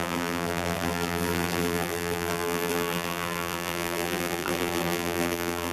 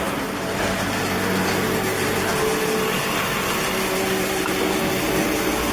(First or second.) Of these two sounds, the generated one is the first